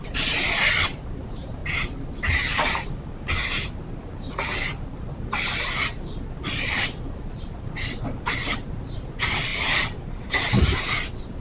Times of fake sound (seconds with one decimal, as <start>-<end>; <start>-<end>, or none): 0.0-1.6; 6.3-11.4